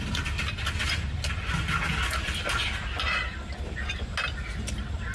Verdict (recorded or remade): recorded